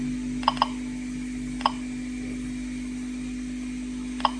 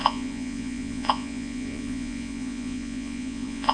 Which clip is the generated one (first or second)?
second